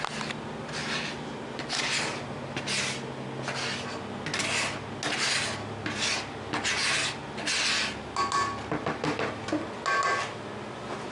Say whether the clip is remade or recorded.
recorded